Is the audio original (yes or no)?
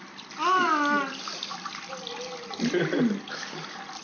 yes